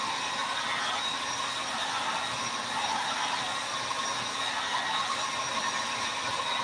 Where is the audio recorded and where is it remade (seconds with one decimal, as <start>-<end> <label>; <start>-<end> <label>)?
0.0-6.6 recorded